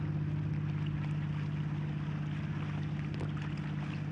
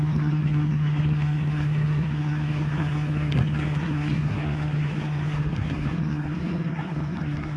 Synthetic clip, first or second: second